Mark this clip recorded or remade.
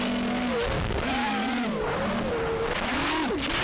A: recorded